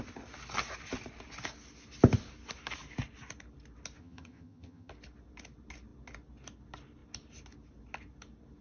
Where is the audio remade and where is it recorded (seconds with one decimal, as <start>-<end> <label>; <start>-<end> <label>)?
0.0-4.0 recorded; 4.0-4.9 remade; 4.9-8.6 recorded

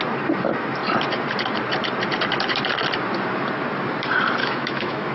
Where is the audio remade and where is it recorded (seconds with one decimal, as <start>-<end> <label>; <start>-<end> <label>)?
0.0-4.4 recorded; 4.4-5.1 remade

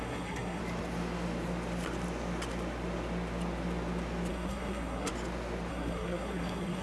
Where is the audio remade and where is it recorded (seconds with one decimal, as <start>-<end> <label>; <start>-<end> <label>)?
0.0-0.6 remade; 0.6-4.3 recorded; 4.3-5.1 remade; 5.1-5.7 recorded; 5.7-6.8 remade

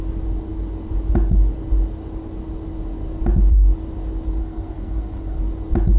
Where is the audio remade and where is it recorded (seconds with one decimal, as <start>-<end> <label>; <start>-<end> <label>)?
0.0-4.4 recorded; 4.4-5.4 remade; 5.4-6.0 recorded